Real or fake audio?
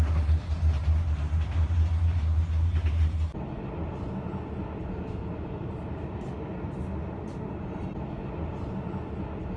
real